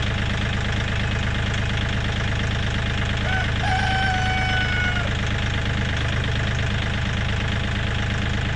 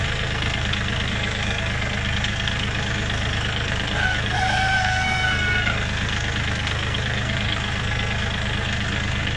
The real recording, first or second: first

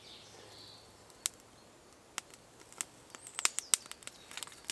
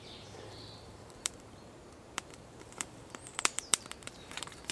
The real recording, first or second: first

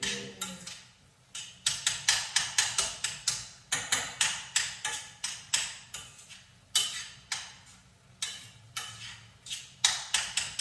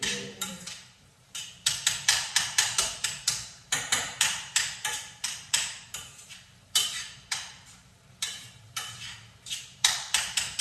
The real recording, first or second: first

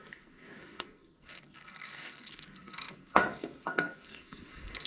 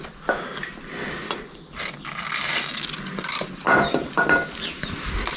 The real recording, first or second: second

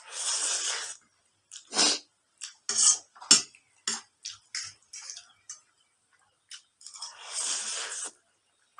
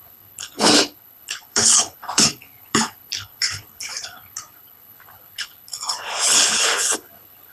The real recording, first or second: first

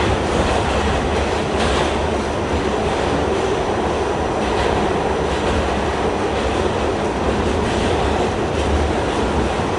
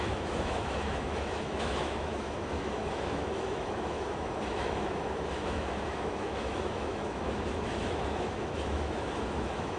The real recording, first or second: first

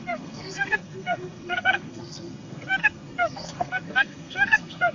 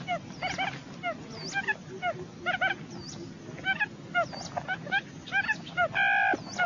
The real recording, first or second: second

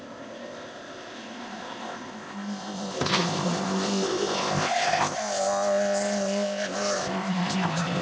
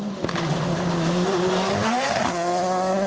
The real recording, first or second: second